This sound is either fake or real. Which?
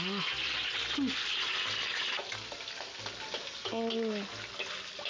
real